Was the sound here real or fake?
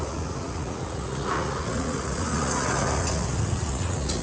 fake